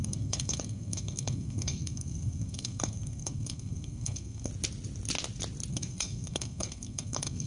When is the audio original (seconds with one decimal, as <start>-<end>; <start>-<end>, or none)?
4.5-5.7

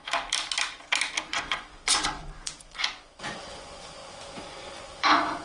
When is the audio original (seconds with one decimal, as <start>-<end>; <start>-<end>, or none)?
0.0-1.3

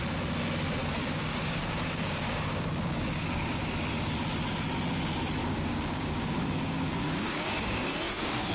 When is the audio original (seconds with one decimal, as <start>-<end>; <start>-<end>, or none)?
0.0-0.8; 3.7-5.4

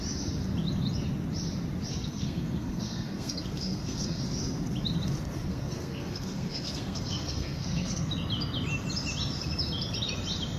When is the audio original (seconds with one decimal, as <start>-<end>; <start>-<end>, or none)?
0.0-1.9; 4.2-5.5; 8.1-10.6